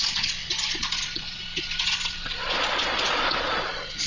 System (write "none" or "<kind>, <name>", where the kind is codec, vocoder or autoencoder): vocoder, Vocos